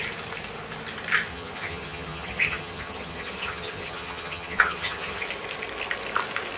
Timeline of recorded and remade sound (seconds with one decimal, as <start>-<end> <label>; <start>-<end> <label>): 0.0-1.3 recorded; 1.3-5.3 remade; 5.3-6.6 recorded